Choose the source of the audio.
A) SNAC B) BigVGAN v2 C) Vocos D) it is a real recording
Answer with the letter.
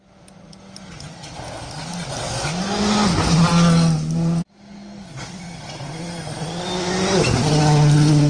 D